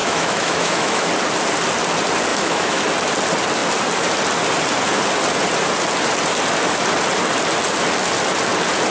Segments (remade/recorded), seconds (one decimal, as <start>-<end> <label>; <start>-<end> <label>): 0.0-1.1 remade; 1.1-2.3 recorded; 2.3-2.8 remade; 2.8-8.9 recorded